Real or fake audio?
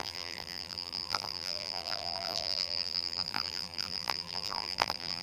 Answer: fake